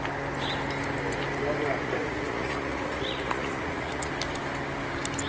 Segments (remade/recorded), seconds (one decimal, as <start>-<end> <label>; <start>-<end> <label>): 0.0-1.8 recorded; 1.8-4.1 remade; 4.1-5.3 recorded